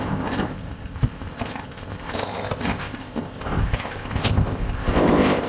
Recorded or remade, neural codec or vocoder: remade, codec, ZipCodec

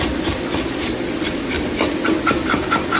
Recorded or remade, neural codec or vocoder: recorded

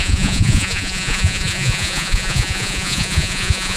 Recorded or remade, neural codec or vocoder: remade, vocoder, Vocos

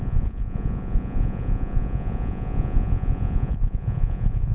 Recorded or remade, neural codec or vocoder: remade, vocoder, Vocos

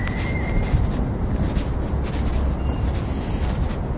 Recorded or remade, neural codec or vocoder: recorded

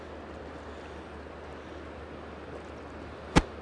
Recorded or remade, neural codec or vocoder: recorded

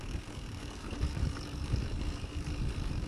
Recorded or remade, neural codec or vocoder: remade, codec, DAC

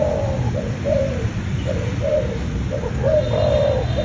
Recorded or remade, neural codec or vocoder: remade, vocoder, BigVGAN v2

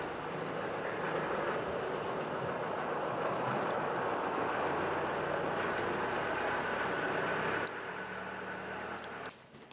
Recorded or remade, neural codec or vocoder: recorded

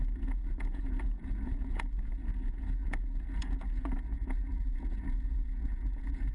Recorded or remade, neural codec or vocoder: remade, vocoder, Vocos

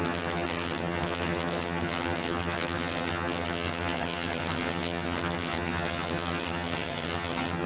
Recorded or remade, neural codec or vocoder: remade, vocoder, HiFi-GAN